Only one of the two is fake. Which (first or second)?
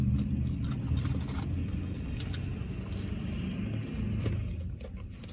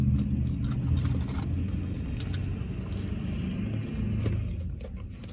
first